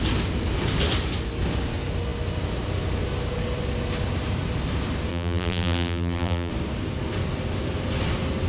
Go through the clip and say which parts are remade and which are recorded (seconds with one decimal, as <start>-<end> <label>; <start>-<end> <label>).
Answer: 0.0-5.1 recorded; 5.1-6.5 remade; 6.5-8.5 recorded